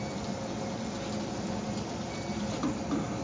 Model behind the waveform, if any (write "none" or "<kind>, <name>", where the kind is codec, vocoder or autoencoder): none